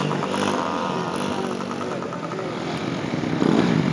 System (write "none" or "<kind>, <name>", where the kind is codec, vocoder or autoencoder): none